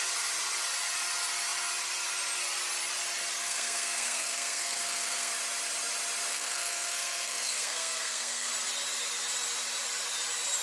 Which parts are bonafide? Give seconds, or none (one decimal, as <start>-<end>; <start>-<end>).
0.0-3.4; 5.3-6.3; 8.5-10.6